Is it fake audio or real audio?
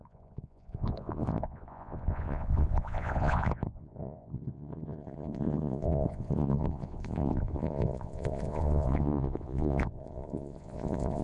fake